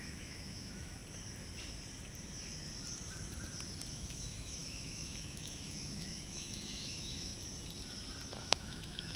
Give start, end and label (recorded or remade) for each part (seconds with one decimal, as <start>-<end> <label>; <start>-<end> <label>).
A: 0.0-1.0 remade; 1.0-3.9 recorded; 3.9-7.3 remade; 7.3-8.4 recorded; 8.4-9.2 remade